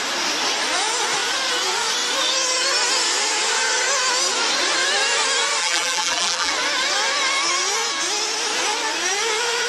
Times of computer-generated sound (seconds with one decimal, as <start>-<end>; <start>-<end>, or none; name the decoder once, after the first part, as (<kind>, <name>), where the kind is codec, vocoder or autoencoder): 5.6-6.5 (vocoder, BigVGAN v2)